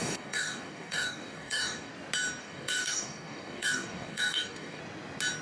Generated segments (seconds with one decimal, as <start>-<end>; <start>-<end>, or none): 0.0-1.9; 2.4-4.8